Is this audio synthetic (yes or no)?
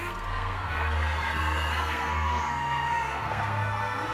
yes